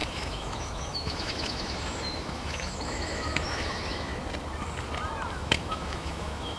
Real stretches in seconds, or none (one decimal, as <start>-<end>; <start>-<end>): 4.1-5.3